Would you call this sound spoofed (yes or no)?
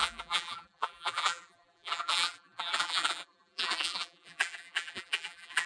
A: yes